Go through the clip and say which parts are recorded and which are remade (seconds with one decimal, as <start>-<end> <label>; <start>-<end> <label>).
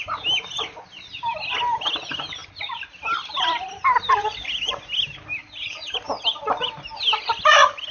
0.0-7.9 recorded